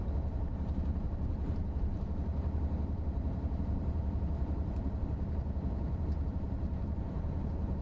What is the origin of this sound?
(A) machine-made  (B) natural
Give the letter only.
A